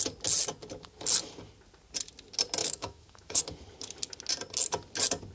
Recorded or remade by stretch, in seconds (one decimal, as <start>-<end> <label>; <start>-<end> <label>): 0.0-2.6 recorded; 2.6-3.4 remade; 3.4-5.3 recorded